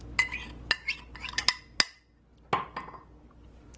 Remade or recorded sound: recorded